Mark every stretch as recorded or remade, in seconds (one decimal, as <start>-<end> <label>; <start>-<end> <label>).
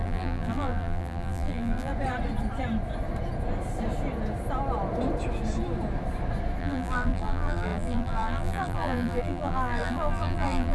0.0-1.9 remade; 1.9-6.6 recorded; 6.6-10.7 remade